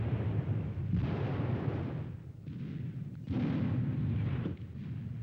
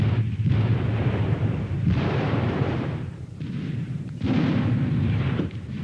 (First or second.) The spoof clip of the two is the second